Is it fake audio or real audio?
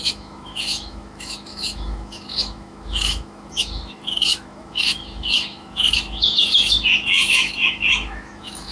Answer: fake